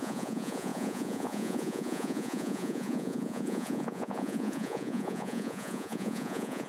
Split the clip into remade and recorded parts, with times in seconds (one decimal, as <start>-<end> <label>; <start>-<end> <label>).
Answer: 0.0-6.7 remade